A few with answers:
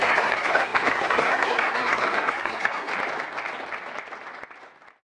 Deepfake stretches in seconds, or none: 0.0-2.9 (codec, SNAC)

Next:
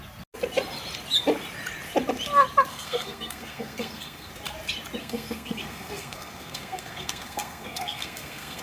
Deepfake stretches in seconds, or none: 2.7-4.3 (codec, SNAC); 5.0-8.6

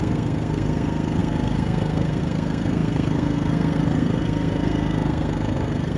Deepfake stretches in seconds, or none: 0.0-6.0 (codec, SNAC)

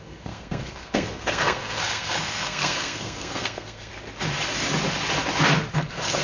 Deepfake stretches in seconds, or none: 0.0-3.9 (codec, SNAC); 5.7-6.2

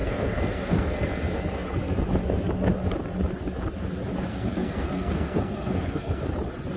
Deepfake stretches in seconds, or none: 0.0-1.1 (codec, SNAC); 4.3-6.3

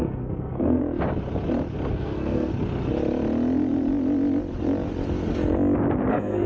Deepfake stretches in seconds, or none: 0.0-0.8 (codec, SNAC); 1.9-2.5; 6.1-6.5

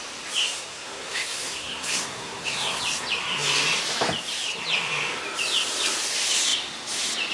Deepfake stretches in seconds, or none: 0.4-2.8 (codec, SNAC)